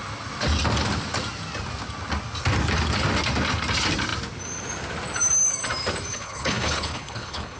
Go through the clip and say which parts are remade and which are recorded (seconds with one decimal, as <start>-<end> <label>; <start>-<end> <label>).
0.0-6.1 recorded; 6.1-7.6 remade